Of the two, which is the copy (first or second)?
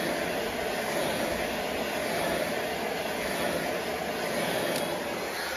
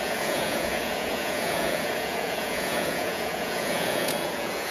second